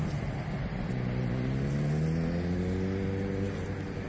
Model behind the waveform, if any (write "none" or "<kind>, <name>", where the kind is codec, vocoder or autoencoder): none